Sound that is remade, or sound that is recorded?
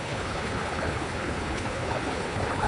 remade